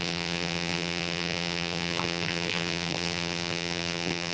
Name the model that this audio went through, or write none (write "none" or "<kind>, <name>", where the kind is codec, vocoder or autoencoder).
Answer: vocoder, BigVGAN v2